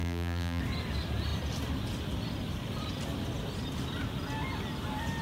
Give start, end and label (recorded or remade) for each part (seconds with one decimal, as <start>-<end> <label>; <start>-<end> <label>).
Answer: 0.0-0.6 remade; 0.6-5.2 recorded